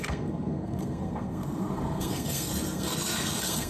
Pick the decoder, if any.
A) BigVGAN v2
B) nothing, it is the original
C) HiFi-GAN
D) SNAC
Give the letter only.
D